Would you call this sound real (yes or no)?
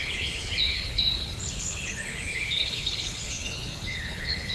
no